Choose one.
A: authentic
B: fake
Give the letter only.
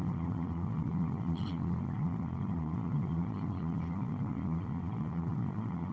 B